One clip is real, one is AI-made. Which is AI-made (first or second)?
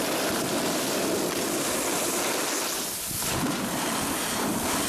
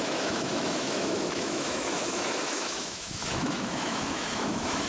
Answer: second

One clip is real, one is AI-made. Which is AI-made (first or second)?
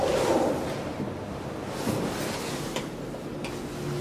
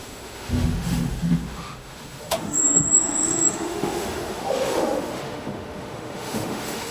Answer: second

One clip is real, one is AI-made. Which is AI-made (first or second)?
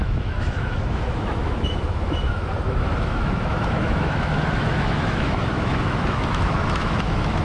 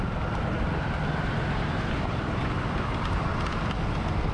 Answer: first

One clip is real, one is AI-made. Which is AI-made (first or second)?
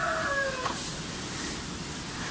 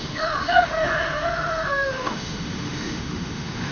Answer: second